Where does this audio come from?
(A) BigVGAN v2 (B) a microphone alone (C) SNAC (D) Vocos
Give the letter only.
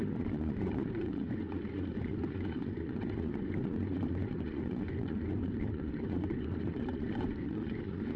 D